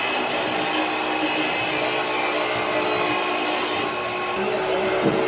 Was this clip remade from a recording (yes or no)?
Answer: no